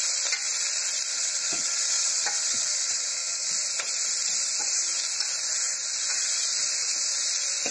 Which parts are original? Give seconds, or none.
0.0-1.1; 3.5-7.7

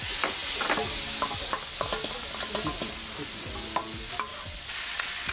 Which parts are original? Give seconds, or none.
0.0-4.3